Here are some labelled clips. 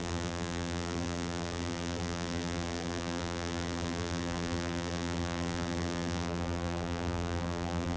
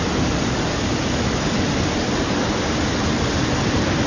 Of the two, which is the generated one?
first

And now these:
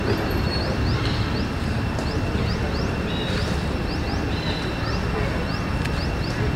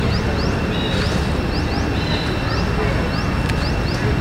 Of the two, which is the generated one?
first